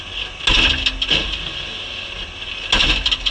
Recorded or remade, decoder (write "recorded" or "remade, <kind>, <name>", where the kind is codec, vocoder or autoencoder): recorded